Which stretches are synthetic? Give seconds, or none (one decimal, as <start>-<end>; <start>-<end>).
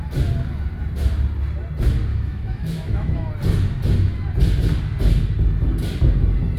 2.1-3.3